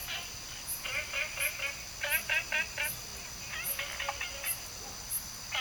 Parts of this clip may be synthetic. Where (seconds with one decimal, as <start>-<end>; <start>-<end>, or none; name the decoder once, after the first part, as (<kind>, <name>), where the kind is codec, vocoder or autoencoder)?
none